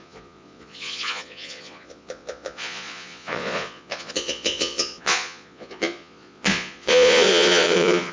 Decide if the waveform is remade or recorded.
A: remade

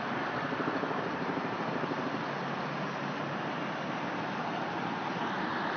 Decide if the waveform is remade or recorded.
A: recorded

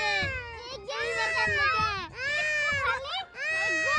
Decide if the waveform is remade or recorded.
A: recorded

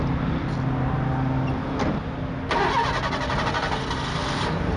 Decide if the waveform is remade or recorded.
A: recorded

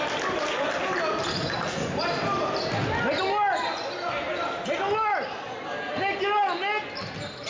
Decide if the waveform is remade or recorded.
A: recorded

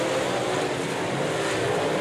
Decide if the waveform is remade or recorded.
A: recorded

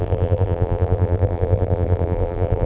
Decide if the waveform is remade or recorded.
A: remade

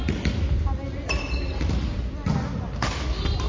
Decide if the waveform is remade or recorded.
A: recorded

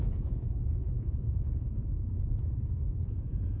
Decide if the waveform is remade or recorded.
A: remade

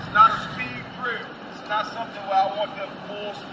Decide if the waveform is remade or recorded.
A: recorded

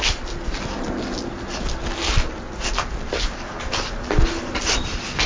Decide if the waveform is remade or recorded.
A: recorded